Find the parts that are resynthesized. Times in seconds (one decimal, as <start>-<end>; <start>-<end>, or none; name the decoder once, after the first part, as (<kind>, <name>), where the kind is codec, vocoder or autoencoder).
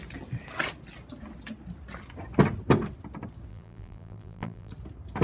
3.5-4.7 (vocoder, BigVGAN v2)